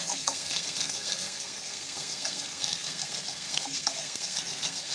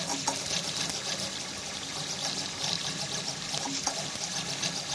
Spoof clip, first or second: first